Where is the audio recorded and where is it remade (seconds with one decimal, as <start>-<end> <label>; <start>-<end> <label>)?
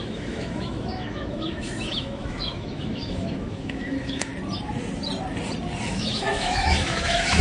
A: 0.0-4.3 remade; 4.3-5.9 recorded; 5.9-7.4 remade